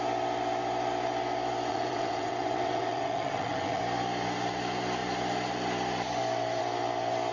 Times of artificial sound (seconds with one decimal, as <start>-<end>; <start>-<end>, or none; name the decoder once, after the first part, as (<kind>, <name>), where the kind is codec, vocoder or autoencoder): 1.7-3.8 (vocoder, WaveNeXt)